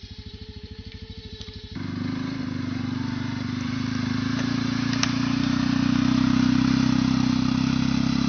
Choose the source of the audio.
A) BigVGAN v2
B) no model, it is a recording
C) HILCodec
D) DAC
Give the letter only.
A